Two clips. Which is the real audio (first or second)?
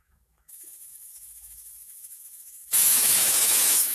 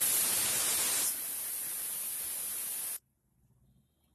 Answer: second